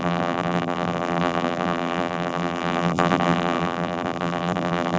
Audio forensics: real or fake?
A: fake